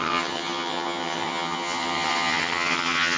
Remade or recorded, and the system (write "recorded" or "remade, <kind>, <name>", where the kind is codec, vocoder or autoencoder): remade, vocoder, HiFi-GAN